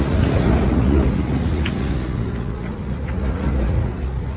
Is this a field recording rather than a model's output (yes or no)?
no